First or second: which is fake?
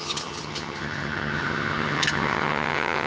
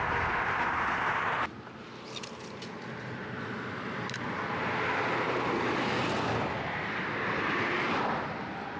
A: first